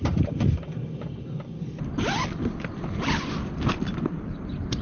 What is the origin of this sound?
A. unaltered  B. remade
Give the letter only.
A